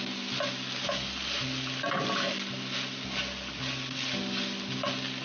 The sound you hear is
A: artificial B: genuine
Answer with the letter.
B